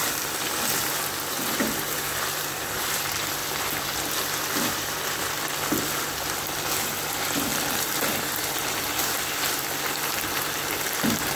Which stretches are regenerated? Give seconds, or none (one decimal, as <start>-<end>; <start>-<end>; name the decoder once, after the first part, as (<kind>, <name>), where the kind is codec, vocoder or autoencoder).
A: 0.0-3.4 (vocoder, BigVGAN v2); 4.4-11.4